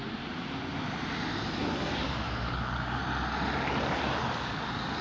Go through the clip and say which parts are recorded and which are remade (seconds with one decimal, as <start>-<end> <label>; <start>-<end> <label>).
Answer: 0.0-1.5 recorded; 1.5-3.0 remade; 3.0-4.2 recorded; 4.2-5.0 remade